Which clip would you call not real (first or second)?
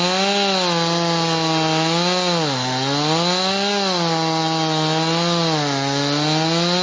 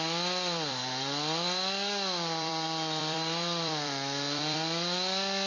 second